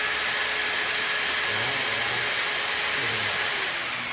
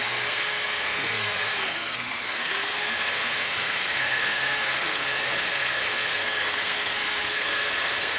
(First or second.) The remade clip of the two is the second